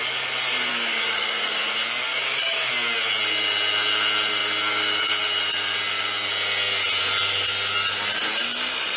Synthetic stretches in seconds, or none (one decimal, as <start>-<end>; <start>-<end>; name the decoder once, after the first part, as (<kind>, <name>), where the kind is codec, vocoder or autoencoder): 0.7-1.6 (codec, DAC); 2.1-2.7